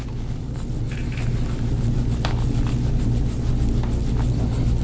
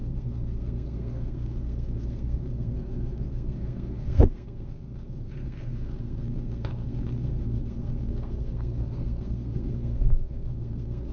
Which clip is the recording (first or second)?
first